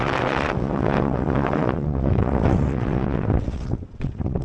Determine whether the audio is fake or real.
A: fake